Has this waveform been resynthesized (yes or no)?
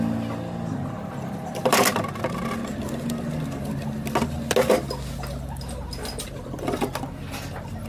no